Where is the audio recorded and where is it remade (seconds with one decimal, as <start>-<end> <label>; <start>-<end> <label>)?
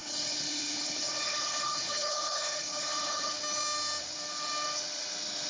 0.0-3.3 remade; 3.3-5.5 recorded